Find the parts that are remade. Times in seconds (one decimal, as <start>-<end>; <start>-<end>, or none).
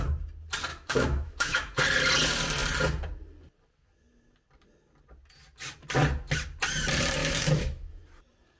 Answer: 0.7-1.8; 7.2-8.0